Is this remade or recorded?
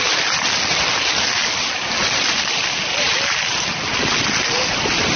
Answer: recorded